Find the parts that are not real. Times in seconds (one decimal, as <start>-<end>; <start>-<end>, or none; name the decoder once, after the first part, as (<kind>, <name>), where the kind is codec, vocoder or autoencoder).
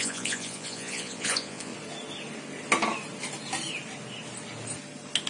0.0-1.7 (vocoder, Vocos)